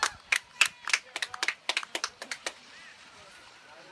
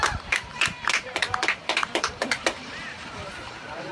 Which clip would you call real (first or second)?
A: first